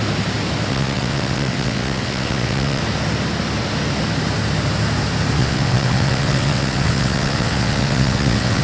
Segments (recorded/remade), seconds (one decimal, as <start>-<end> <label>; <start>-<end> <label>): 0.0-0.7 recorded; 0.7-2.8 remade; 2.8-5.4 recorded; 5.4-8.6 remade